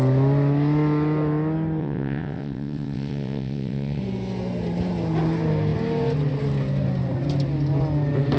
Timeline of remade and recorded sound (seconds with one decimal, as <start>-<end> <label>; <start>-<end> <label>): 0.0-1.8 recorded; 1.8-4.0 remade; 4.0-8.4 recorded